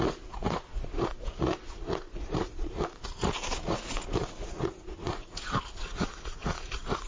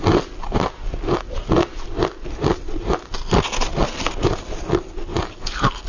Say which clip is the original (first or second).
second